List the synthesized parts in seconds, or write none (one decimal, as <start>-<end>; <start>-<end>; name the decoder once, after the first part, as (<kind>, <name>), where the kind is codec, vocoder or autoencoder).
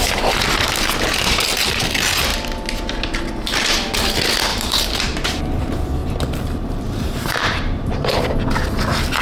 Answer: 4.5-5.4 (vocoder, BigVGAN v2); 6.0-8.2